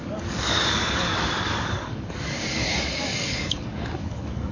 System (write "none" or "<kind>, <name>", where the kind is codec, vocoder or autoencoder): codec, DAC